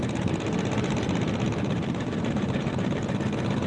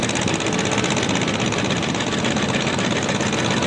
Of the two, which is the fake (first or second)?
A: first